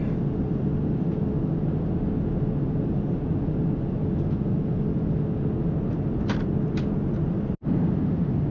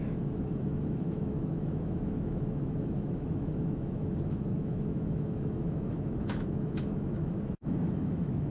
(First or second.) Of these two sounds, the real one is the first